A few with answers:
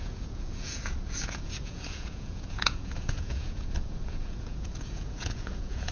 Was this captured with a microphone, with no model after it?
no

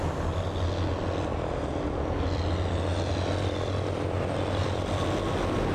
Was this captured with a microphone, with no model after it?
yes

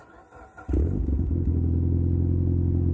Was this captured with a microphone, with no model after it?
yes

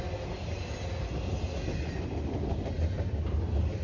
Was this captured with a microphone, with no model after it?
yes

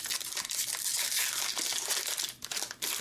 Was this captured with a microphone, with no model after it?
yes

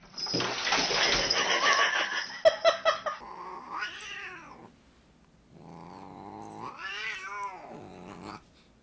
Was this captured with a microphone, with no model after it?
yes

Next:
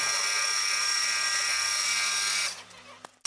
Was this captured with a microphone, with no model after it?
yes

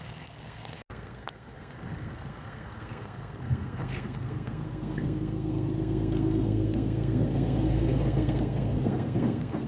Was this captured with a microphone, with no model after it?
no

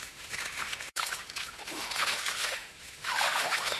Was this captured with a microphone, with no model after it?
no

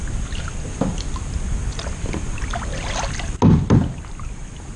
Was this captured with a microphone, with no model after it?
yes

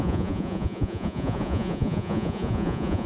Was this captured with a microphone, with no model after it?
no